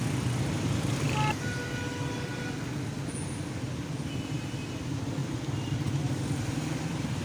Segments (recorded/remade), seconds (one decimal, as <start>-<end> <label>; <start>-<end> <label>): 0.0-5.2 recorded; 5.2-6.1 remade; 6.1-7.2 recorded